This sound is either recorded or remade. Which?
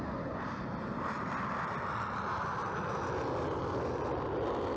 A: recorded